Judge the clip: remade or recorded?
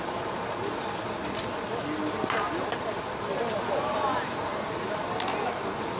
recorded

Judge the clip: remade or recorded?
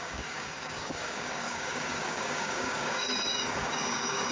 remade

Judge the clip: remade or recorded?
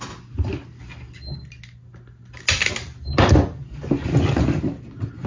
recorded